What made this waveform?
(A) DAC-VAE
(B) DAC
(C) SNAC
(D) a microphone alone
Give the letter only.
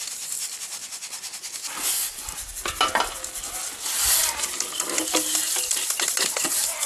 D